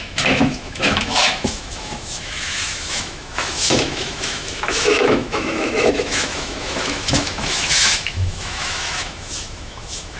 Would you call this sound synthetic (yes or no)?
yes